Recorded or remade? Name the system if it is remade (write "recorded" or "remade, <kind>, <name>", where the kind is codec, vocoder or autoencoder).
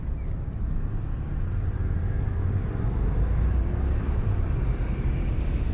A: recorded